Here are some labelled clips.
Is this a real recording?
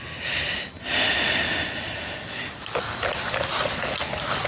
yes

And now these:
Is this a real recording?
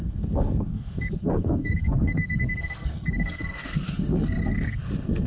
no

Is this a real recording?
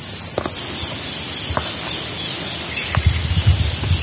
yes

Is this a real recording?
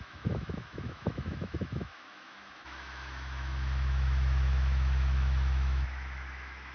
no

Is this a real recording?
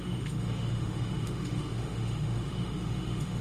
no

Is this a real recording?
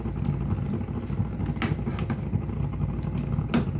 yes